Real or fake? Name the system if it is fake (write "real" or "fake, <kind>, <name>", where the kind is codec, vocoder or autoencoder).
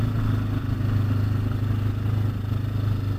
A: real